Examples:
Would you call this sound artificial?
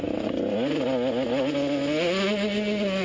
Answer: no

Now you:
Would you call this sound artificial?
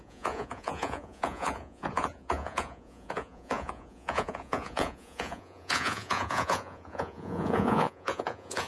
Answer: yes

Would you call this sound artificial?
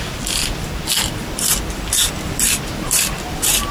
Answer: yes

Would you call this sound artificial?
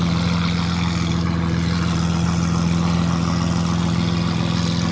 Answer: no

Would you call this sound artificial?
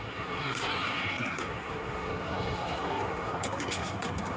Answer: yes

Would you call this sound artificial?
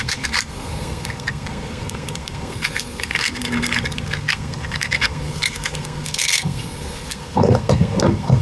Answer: yes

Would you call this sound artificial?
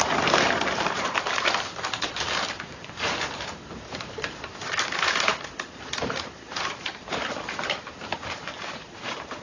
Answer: yes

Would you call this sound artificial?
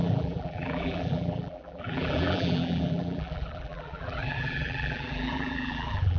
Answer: yes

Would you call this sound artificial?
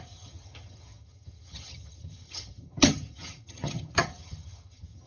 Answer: yes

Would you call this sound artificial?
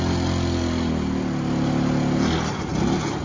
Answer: no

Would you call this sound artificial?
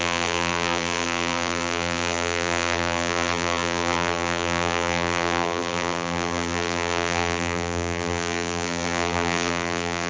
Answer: yes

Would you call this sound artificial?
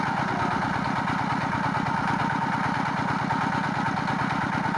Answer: no